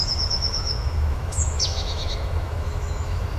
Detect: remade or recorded remade